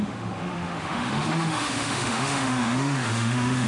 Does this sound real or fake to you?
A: fake